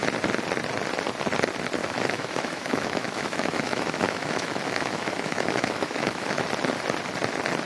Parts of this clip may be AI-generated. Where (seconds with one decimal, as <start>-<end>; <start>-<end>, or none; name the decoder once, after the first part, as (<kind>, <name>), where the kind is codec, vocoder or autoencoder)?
1.8-6.4 (autoencoder, DAC-VAE)